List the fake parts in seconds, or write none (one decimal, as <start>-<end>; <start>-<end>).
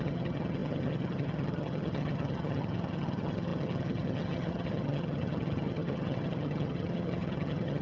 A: 0.0-7.8